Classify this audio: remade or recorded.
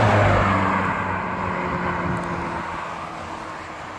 recorded